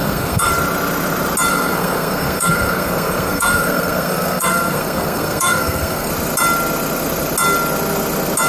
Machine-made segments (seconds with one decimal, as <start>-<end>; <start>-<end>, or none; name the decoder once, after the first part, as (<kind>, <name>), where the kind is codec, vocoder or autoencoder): 0.0-0.5 (codec, SNAC); 1.5-6.1